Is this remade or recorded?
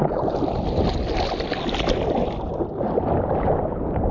recorded